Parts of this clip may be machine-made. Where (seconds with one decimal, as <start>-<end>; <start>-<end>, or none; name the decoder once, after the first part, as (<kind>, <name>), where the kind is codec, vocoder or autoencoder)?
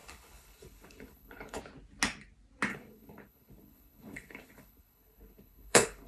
0.0-1.6 (codec, HILCodec); 2.7-6.1